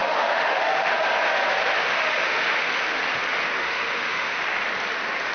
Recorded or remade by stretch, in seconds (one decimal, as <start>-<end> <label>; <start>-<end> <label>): 0.0-0.9 remade; 0.9-1.8 recorded; 1.8-2.8 remade; 2.8-3.6 recorded; 3.6-4.4 remade; 4.4-5.3 recorded